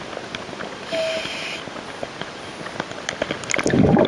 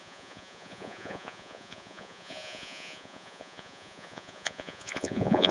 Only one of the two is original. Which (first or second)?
first